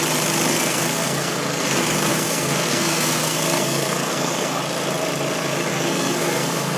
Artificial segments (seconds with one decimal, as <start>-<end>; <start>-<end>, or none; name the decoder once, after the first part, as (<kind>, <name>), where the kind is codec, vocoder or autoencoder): 0.5-4.6 (codec, SNAC); 5.7-6.8